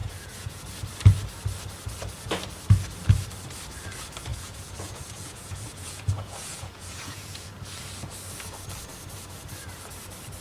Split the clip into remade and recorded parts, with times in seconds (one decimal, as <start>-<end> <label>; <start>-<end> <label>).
0.0-0.6 remade; 0.6-4.3 recorded; 4.3-7.5 remade; 7.5-10.4 recorded